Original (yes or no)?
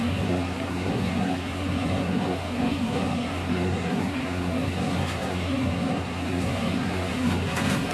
no